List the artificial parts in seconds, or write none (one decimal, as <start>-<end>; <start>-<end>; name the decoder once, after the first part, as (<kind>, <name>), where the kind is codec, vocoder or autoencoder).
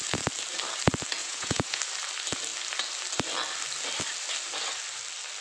1.2-1.8 (vocoder, Vocos)